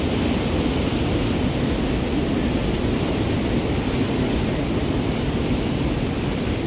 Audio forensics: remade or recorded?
recorded